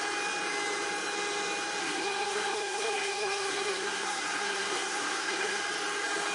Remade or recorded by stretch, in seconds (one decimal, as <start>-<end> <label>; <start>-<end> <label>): 0.0-1.8 recorded; 1.8-5.6 remade; 5.6-6.3 recorded